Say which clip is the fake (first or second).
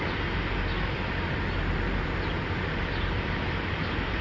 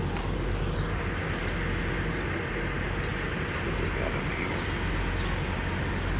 first